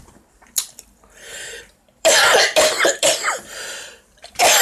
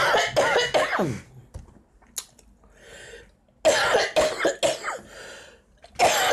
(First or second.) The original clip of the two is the second